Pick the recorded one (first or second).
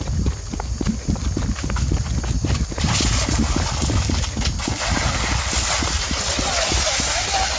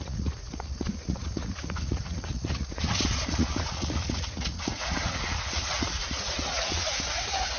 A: first